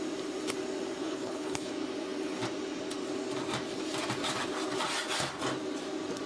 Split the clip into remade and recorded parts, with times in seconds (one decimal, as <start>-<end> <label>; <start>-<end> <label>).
0.0-1.0 recorded; 1.0-1.7 remade; 1.7-6.3 recorded

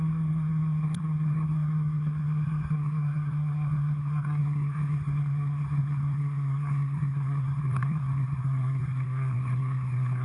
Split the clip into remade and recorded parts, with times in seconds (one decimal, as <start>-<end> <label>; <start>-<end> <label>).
0.0-10.2 remade

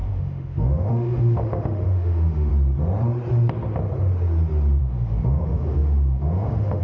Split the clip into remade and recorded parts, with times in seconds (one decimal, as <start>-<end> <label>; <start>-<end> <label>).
0.0-2.5 remade; 2.5-4.8 recorded; 4.8-6.8 remade

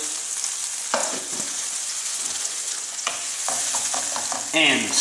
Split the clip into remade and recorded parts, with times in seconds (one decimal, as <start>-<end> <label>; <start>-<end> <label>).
0.0-1.0 recorded; 1.0-4.0 remade; 4.0-5.0 recorded

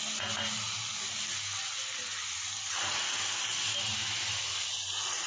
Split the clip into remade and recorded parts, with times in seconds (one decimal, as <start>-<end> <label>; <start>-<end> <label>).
0.0-5.3 recorded